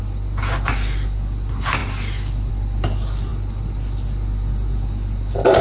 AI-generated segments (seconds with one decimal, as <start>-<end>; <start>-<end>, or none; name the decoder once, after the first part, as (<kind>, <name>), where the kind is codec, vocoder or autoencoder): none